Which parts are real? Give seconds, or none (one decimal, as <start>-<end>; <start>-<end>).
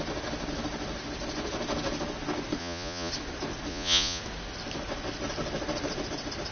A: 0.0-2.6; 3.1-3.7; 4.2-6.5